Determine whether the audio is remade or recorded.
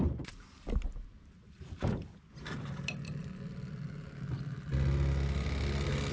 recorded